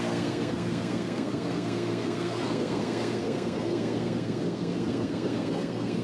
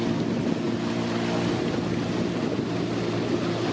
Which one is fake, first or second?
first